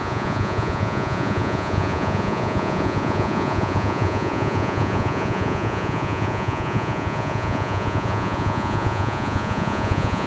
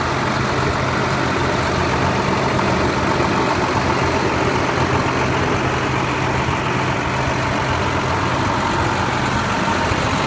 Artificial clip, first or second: first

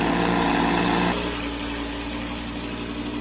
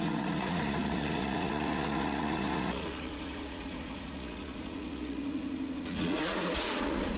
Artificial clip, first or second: second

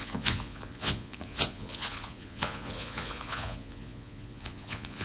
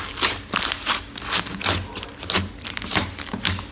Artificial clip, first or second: first